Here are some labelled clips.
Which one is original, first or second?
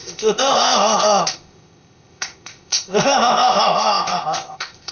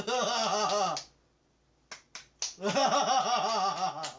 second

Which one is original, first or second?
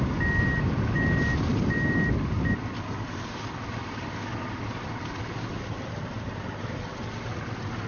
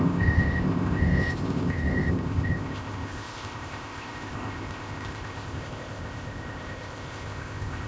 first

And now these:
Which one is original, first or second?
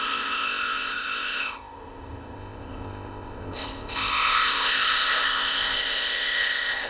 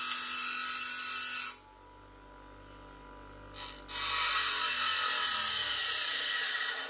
second